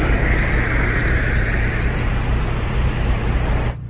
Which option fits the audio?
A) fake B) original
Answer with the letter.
A